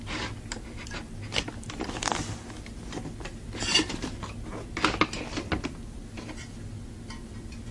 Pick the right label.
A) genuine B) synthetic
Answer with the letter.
A